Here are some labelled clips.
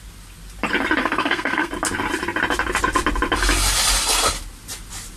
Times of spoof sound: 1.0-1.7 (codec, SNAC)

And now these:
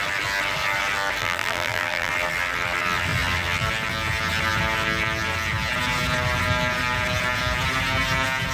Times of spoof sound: 1.2-2.1 (vocoder, BigVGAN v2)

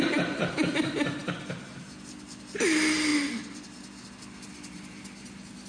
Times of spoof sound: none